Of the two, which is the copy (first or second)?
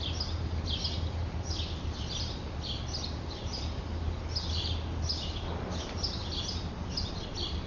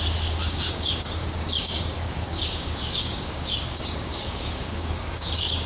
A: second